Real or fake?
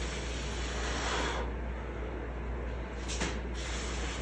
real